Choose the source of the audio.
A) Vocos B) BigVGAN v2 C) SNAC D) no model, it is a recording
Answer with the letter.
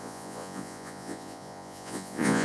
A